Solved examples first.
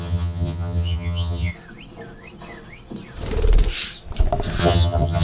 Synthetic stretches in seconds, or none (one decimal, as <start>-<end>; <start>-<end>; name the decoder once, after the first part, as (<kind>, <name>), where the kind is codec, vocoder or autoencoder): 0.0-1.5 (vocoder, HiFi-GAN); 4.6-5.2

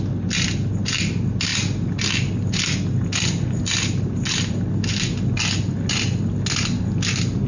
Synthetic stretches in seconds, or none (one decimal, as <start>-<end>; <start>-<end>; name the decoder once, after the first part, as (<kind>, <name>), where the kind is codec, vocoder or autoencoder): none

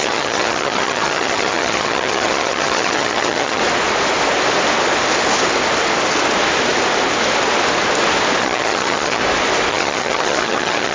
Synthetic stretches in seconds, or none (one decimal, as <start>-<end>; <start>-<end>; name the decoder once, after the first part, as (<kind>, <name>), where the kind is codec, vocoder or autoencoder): 0.0-3.6 (vocoder, HiFi-GAN); 8.4-9.2; 9.7-10.9

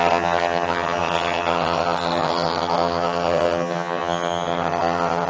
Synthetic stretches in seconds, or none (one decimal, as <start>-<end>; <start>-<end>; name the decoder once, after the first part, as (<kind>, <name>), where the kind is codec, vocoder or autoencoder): 0.0-5.3 (vocoder, HiFi-GAN)